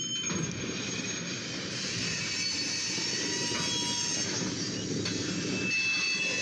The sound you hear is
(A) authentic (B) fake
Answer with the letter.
A